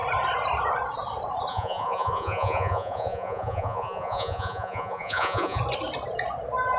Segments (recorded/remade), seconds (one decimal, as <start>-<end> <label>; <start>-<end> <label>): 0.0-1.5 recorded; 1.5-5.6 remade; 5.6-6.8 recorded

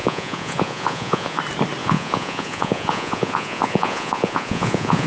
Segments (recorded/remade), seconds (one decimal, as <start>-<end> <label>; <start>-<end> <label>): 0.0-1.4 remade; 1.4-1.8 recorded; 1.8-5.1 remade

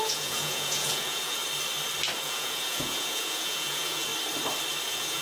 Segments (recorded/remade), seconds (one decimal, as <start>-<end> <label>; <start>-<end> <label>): 0.0-1.4 remade; 1.4-2.2 recorded; 2.2-4.1 remade; 4.1-4.8 recorded; 4.8-5.2 remade